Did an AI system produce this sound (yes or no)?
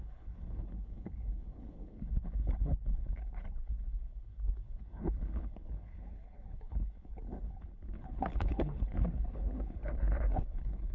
yes